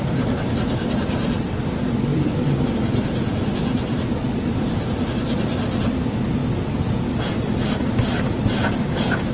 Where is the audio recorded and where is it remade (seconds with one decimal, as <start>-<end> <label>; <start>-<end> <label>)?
0.0-9.3 recorded

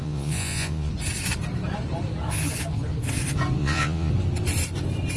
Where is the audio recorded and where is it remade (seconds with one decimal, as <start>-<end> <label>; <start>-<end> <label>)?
0.0-0.9 remade; 0.9-3.6 recorded; 3.6-4.1 remade; 4.1-5.2 recorded

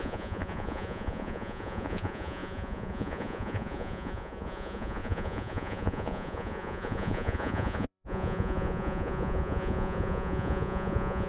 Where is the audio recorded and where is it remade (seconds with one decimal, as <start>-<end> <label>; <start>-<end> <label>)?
0.0-11.3 remade

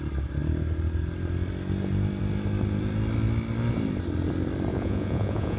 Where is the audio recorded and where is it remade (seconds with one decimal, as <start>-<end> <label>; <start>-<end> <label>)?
0.0-4.7 recorded; 4.7-5.6 remade

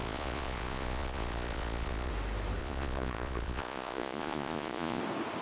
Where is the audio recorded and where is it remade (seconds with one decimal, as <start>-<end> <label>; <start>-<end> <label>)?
0.0-2.1 remade; 2.1-2.6 recorded; 2.6-5.0 remade; 5.0-5.4 recorded

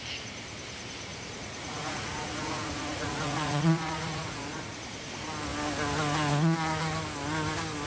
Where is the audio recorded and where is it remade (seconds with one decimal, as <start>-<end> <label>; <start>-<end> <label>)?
0.0-1.1 recorded; 1.1-4.8 remade; 4.8-7.9 recorded

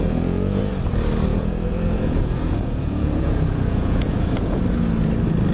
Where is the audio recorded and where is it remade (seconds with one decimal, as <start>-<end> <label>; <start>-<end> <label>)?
0.0-0.6 remade; 0.6-1.3 recorded; 1.3-4.6 remade; 4.6-5.5 recorded

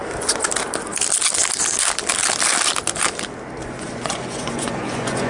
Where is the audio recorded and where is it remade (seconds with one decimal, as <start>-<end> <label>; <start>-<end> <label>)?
0.0-3.6 recorded; 3.6-5.3 remade